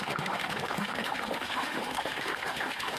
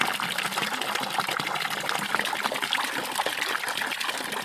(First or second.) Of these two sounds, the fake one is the first